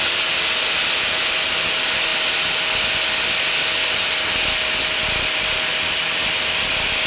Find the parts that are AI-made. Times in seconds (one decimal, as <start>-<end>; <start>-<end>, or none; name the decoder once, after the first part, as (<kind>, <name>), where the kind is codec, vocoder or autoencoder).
none